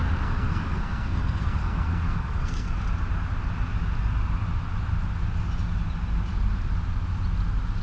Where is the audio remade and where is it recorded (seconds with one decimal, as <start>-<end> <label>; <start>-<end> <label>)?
0.0-2.8 remade; 2.8-7.8 recorded